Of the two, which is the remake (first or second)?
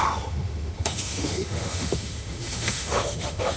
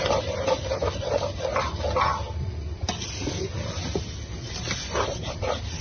first